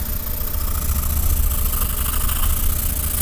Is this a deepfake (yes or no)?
no